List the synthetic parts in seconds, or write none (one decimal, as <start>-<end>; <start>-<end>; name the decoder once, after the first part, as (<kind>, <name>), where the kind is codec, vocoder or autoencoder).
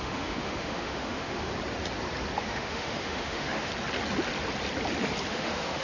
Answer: 0.0-1.5 (autoencoder, DAC-VAE); 2.4-3.7; 5.3-5.8